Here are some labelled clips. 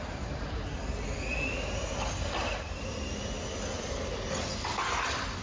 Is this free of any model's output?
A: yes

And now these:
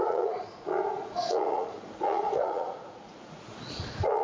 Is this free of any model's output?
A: no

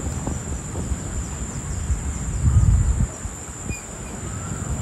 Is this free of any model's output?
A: yes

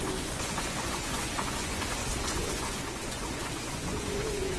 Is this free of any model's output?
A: no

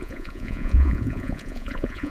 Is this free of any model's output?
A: no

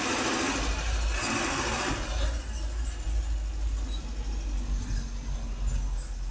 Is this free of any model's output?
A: yes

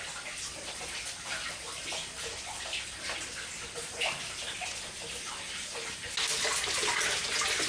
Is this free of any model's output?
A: yes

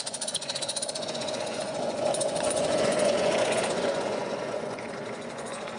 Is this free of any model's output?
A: no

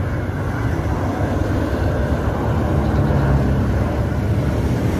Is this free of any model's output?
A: yes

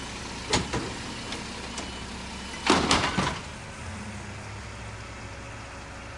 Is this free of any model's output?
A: yes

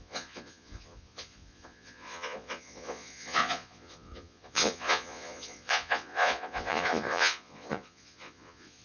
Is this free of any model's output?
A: no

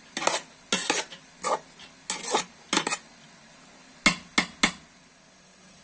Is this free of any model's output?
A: yes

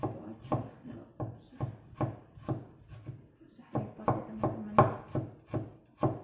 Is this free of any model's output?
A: yes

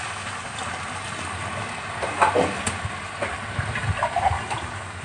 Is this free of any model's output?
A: yes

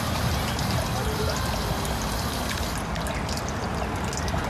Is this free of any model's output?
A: yes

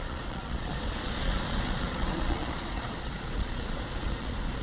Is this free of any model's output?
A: no